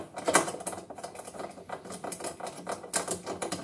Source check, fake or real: real